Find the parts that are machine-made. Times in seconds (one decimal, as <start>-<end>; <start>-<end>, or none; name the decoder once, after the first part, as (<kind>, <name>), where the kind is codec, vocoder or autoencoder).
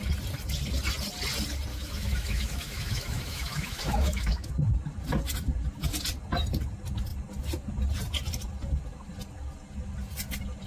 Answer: 1.7-4.5 (autoencoder, DAC-VAE)